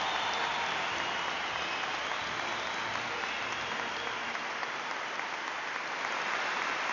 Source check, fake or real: real